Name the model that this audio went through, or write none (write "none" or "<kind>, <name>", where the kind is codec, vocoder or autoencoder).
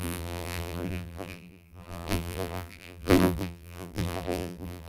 vocoder, BigVGAN v2